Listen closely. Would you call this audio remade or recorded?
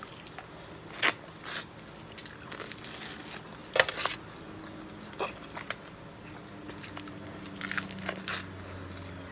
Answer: recorded